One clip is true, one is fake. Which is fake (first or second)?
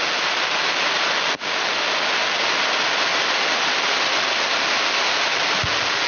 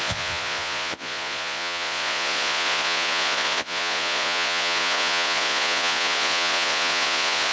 second